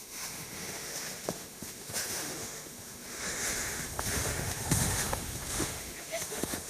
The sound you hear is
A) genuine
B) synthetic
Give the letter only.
B